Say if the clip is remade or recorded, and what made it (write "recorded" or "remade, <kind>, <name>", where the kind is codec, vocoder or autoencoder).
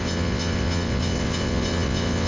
remade, vocoder, WaveNeXt